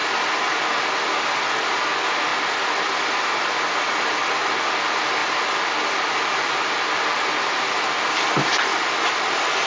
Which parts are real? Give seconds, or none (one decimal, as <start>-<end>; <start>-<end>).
0.0-9.7